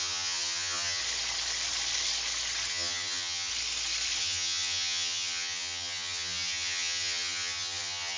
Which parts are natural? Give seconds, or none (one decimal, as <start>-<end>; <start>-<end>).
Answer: 1.0-2.7; 3.5-4.2